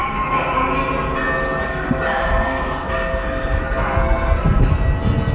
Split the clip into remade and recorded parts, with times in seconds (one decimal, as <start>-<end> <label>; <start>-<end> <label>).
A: 0.0-0.7 remade; 0.7-1.6 recorded; 1.6-4.7 remade; 4.7-5.3 recorded